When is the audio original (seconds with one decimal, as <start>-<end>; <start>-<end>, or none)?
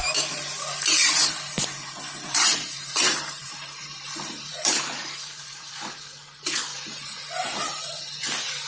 0.0-1.0; 5.7-6.7; 8.2-8.7